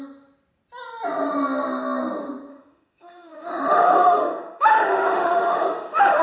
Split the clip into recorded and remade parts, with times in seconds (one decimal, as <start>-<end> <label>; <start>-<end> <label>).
0.0-2.5 recorded; 2.5-6.2 remade